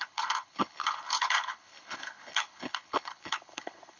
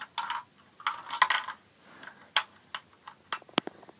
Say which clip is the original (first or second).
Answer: second